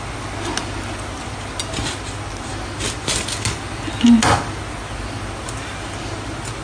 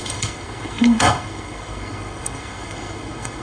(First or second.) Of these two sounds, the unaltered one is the first